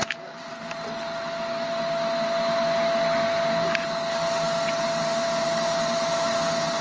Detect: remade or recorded recorded